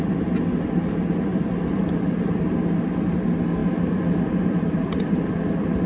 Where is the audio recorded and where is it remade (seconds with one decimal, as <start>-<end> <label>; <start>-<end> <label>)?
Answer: 0.0-1.3 recorded; 1.3-2.6 remade; 2.6-3.6 recorded; 3.6-5.3 remade; 5.3-5.9 recorded